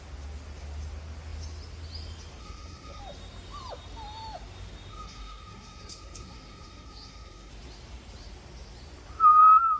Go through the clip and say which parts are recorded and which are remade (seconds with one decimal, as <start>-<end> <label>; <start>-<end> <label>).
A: 0.0-2.4 recorded; 2.4-3.0 remade; 3.0-4.9 recorded; 4.9-7.5 remade; 7.5-9.8 recorded